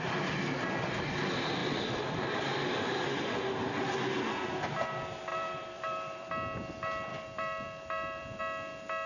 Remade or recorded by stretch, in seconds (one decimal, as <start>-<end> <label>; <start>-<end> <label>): 0.0-5.3 recorded; 5.3-6.3 remade; 6.3-7.1 recorded; 7.1-8.4 remade; 8.4-9.1 recorded